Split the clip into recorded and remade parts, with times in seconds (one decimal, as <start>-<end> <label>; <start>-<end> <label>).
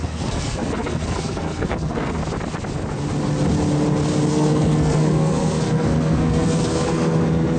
0.0-2.2 remade; 2.2-4.3 recorded; 4.3-7.6 remade